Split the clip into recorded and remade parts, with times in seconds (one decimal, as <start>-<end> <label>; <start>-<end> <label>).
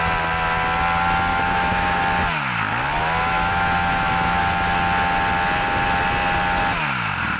0.0-1.3 recorded; 1.3-2.0 remade; 2.0-3.0 recorded; 3.0-4.4 remade; 4.4-7.4 recorded